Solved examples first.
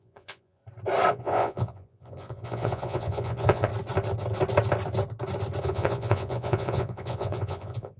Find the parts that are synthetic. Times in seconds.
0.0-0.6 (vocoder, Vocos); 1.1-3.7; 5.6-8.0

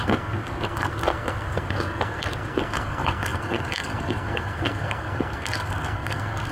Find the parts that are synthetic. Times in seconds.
0.0-6.5 (codec, SNAC)